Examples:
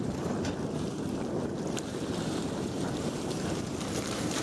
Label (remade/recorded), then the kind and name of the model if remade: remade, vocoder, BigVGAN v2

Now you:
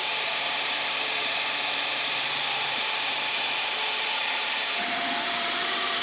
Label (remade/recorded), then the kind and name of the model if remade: remade, vocoder, BigVGAN v2